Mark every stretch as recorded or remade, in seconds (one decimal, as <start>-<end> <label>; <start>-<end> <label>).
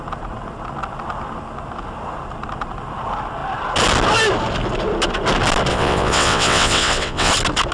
0.0-5.7 recorded; 5.7-7.3 remade; 7.3-7.7 recorded